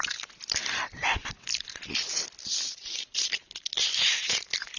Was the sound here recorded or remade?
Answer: recorded